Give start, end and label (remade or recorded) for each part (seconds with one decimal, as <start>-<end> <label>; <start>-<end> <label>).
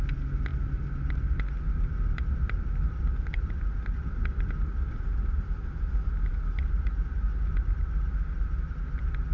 0.0-9.3 recorded